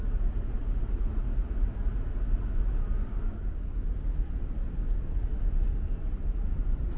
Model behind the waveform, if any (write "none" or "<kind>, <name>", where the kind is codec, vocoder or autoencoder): none